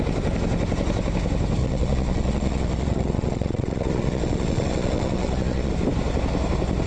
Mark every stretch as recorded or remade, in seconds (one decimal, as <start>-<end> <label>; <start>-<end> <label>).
0.0-1.6 recorded; 1.6-5.7 remade; 5.7-6.9 recorded